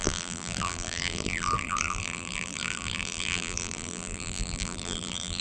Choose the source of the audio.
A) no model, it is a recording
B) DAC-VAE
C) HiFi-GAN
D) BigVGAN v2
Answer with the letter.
D